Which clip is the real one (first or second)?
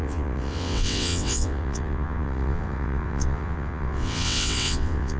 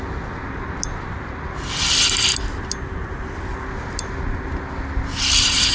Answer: second